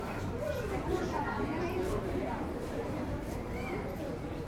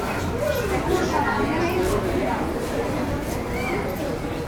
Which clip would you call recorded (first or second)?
second